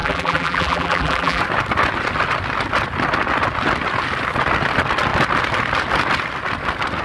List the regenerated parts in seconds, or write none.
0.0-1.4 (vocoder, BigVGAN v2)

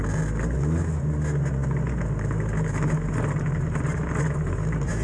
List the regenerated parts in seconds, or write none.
none